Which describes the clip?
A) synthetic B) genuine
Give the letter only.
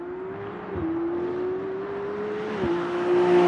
B